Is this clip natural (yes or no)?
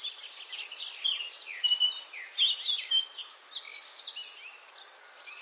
yes